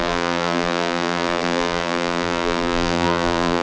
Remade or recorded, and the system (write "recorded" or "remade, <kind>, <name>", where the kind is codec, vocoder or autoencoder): remade, vocoder, BigVGAN v2